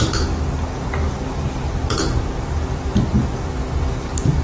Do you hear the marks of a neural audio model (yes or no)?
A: no